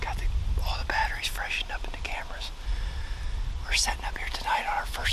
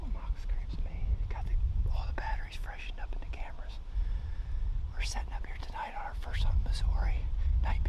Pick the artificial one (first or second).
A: second